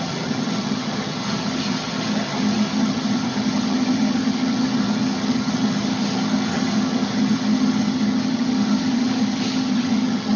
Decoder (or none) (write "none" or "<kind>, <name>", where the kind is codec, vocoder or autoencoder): vocoder, HiFi-GAN